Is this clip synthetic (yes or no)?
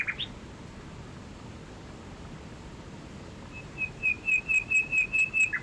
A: no